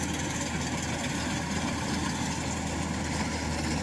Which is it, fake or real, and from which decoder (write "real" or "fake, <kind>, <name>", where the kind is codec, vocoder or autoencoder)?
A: real